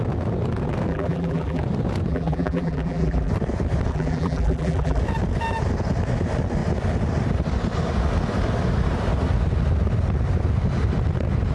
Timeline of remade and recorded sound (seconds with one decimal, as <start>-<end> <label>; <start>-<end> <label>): 0.0-0.9 recorded; 0.9-1.6 remade; 1.6-2.1 recorded; 2.1-3.3 remade; 3.3-3.9 recorded; 3.9-5.0 remade; 5.0-11.5 recorded